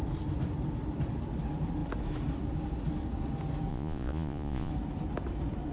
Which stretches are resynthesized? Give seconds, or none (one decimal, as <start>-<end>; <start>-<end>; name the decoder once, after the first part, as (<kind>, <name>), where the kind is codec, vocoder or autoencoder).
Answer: 3.7-4.7 (vocoder, Vocos)